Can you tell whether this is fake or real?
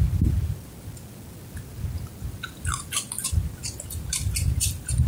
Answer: real